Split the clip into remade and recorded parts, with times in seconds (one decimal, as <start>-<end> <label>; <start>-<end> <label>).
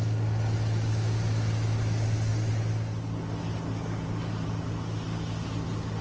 0.0-6.0 recorded